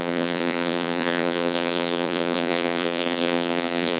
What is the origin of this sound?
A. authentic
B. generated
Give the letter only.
B